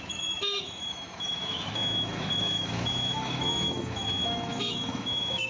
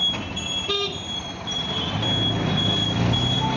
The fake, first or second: first